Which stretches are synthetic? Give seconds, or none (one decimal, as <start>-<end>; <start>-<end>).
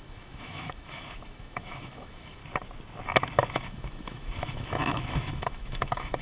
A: 0.0-2.4; 3.5-6.2